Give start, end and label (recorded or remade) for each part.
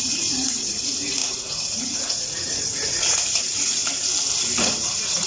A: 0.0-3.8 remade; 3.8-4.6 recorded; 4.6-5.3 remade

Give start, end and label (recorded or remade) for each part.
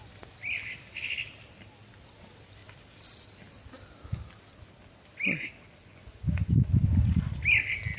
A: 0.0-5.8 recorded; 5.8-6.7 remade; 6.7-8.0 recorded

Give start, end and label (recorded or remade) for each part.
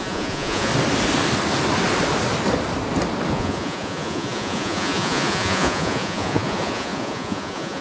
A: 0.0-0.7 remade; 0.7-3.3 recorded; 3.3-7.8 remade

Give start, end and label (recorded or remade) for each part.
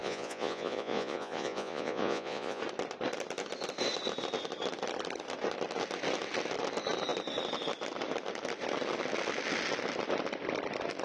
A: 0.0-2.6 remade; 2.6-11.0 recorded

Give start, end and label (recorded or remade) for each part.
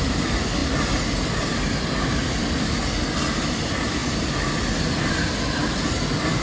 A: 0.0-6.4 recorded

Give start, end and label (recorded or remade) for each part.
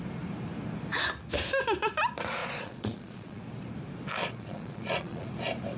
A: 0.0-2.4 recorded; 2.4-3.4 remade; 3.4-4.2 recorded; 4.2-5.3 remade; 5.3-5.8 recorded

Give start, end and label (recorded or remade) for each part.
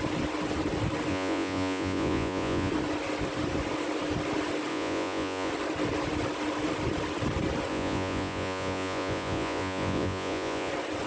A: 0.0-1.1 recorded; 1.1-2.7 remade; 2.7-4.7 recorded; 4.7-5.5 remade; 5.5-7.7 recorded; 7.7-10.7 remade; 10.7-11.1 recorded